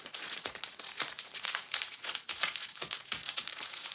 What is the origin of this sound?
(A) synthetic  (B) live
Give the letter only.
A